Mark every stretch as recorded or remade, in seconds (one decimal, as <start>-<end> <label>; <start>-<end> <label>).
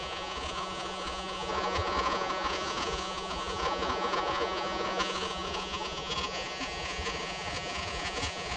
0.0-8.6 remade